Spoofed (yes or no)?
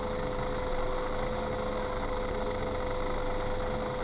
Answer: no